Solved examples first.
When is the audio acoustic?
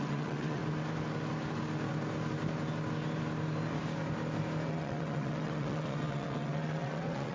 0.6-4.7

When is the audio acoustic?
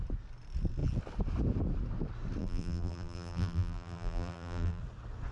0.0-2.4; 4.8-5.3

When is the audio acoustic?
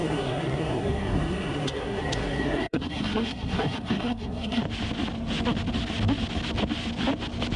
4.6-7.6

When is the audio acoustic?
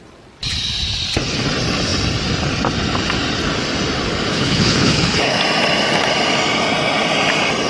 0.0-4.3; 5.4-7.7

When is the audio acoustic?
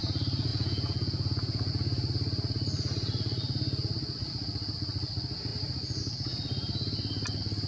0.0-0.5; 1.7-7.7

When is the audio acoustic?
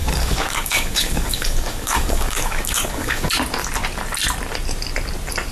3.3-5.5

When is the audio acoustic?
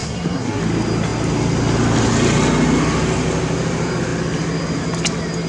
0.6-5.5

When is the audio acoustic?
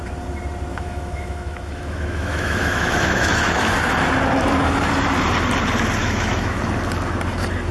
0.0-0.7; 3.7-6.0; 6.6-7.7